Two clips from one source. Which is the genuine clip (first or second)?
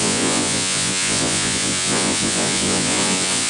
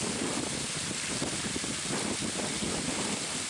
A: second